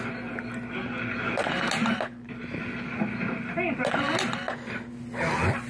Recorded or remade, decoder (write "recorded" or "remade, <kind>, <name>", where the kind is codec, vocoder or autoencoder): recorded